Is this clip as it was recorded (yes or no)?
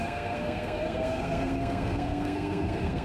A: no